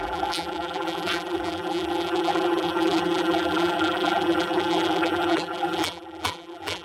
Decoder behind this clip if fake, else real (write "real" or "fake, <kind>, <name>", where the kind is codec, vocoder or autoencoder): fake, vocoder, BigVGAN v2